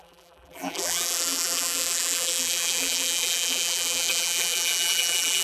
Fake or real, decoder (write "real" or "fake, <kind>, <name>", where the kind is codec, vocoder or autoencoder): fake, vocoder, BigVGAN v2